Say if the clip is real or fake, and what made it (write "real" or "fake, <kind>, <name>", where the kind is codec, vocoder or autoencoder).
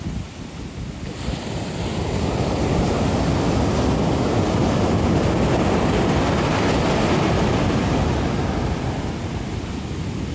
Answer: real